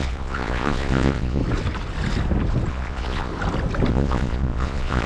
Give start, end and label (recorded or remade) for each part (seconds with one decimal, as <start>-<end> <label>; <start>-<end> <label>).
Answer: 0.0-1.4 remade; 1.4-2.7 recorded; 2.7-3.3 remade; 3.3-3.9 recorded; 3.9-5.1 remade